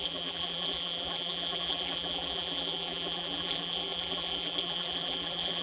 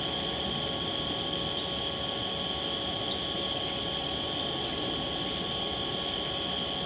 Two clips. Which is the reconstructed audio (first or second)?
first